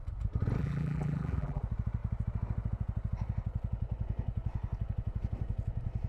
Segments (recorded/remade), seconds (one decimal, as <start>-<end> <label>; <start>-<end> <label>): 0.0-0.6 recorded; 0.6-1.6 remade; 1.6-6.1 recorded